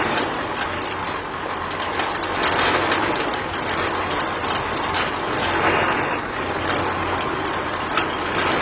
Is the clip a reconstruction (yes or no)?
no